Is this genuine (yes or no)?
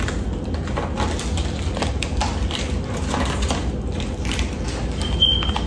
yes